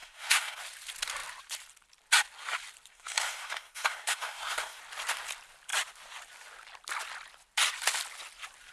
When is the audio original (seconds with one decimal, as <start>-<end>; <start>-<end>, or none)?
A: 0.6-2.9; 4.8-8.7